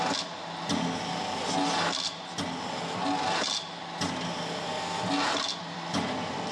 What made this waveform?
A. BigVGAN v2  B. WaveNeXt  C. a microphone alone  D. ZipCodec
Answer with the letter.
C